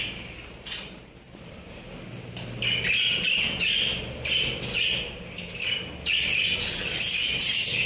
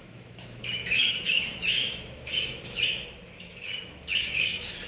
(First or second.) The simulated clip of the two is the second